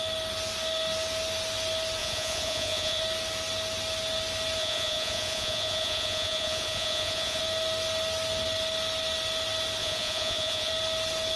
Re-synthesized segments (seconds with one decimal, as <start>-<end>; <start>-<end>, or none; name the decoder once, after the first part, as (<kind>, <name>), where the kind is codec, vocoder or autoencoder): 2.0-3.0 (vocoder, Vocos); 4.6-7.4; 9.8-10.7